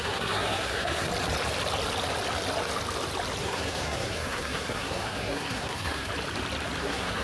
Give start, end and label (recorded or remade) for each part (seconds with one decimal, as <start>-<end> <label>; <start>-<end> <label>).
0.0-1.1 remade; 1.1-3.4 recorded; 3.4-6.1 remade; 6.1-6.8 recorded; 6.8-7.2 remade